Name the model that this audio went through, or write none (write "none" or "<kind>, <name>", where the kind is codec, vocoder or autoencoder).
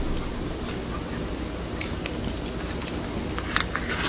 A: none